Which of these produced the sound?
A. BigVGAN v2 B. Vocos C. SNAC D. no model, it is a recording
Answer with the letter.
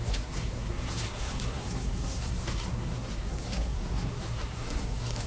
C